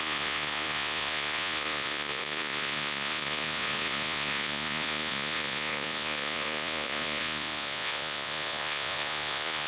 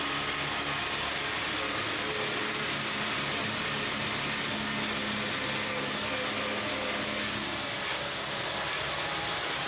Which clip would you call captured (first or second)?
second